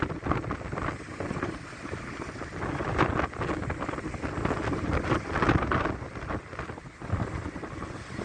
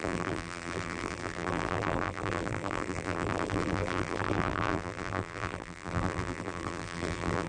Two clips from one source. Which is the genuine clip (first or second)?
first